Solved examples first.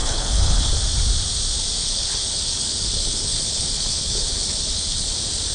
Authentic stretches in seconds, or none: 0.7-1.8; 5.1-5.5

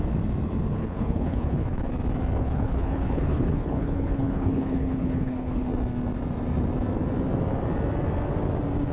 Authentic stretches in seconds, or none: 0.0-0.8; 1.9-2.4; 5.7-8.9

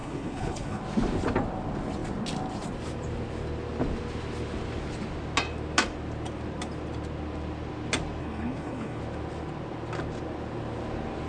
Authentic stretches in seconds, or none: 0.8-8.2; 9.0-11.3